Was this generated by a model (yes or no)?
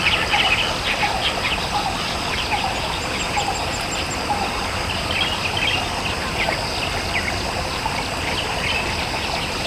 no